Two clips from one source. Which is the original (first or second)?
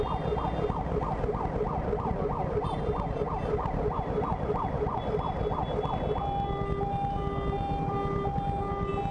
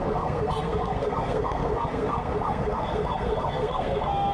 first